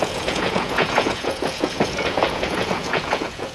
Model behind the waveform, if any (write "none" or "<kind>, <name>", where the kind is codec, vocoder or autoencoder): vocoder, Vocos